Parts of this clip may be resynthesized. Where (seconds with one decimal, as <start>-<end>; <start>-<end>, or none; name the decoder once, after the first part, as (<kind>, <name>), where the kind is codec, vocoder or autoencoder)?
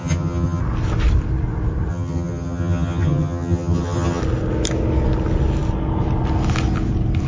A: 0.0-0.6 (vocoder, HiFi-GAN); 1.9-4.2